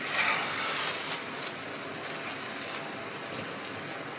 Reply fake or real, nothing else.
real